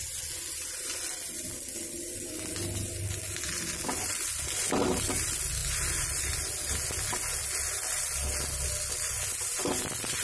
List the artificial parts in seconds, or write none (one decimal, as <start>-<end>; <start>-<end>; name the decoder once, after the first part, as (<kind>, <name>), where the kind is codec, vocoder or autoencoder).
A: none